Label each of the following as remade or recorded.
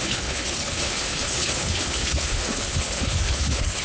remade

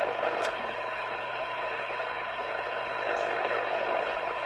remade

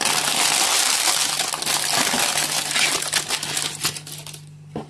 recorded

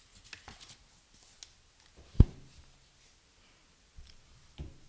recorded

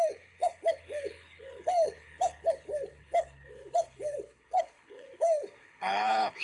remade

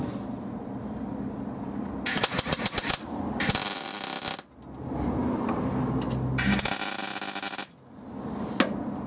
recorded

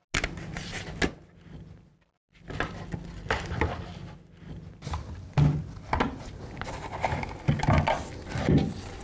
recorded